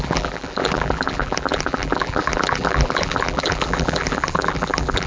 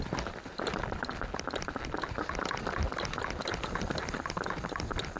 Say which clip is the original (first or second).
second